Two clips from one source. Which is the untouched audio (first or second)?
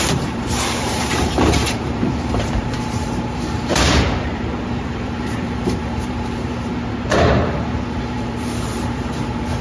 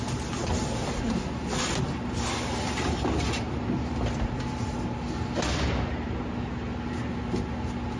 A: second